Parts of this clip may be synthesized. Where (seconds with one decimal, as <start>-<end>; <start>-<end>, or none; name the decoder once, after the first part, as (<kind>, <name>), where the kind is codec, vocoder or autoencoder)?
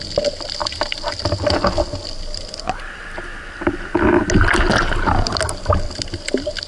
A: none